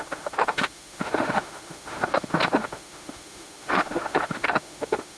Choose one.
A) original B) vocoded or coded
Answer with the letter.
B